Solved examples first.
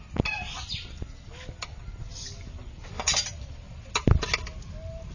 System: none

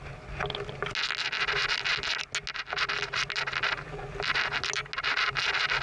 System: none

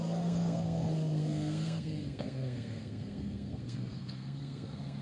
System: codec, SNAC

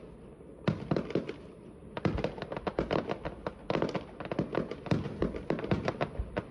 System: none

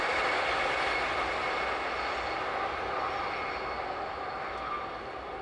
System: none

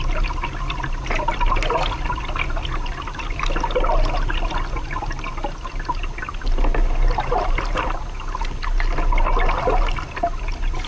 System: none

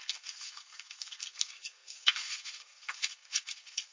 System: codec, SNAC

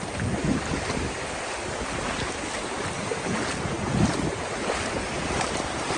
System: none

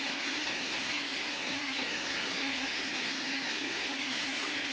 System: codec, SNAC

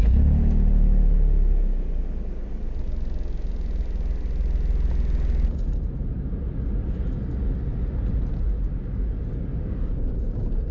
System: none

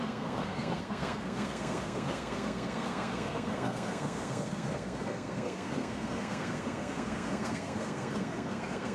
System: codec, SNAC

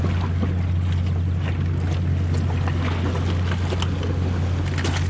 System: none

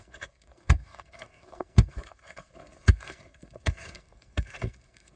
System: codec, SNAC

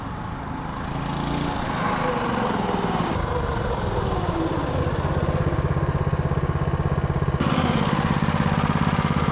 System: none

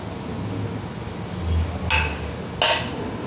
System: none